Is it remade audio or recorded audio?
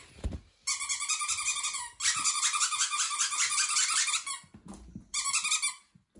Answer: recorded